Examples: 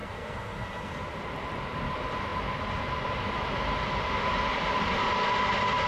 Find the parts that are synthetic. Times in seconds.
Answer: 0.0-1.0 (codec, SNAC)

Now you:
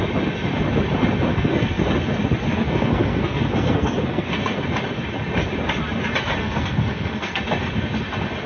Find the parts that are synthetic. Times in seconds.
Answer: 1.3-1.8 (codec, SNAC); 2.5-4.6; 6.4-7.4

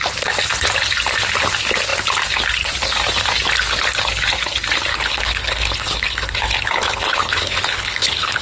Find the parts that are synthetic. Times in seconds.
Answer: 4.9-8.4 (codec, HILCodec)

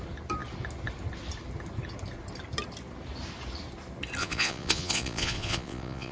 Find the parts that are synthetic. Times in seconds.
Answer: 4.2-6.1 (vocoder, Vocos)

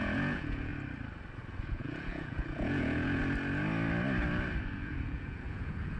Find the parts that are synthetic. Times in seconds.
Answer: 0.0-0.7 (vocoder, Vocos); 1.6-3.2; 4.7-6.0

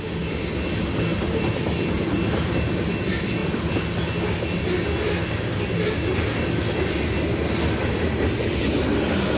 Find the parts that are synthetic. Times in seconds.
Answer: 1.1-2.9 (vocoder, BigVGAN v2)

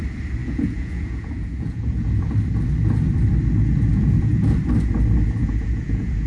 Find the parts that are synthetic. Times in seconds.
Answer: 0.4-2.3 (vocoder, Vocos); 3.9-4.6; 5.4-6.3